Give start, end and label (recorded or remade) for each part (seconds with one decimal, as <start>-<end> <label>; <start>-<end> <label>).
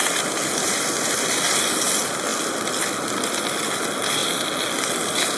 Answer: 0.0-1.7 remade; 1.7-2.3 recorded; 2.3-2.8 remade; 2.8-5.4 recorded